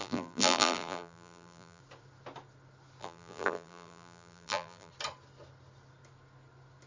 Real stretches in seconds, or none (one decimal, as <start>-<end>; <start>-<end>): 1.8-3.0; 4.9-6.9